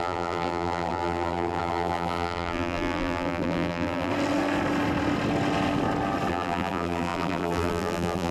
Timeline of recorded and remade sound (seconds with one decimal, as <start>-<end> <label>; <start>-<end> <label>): 0.0-4.1 remade; 4.1-6.3 recorded; 6.3-8.3 remade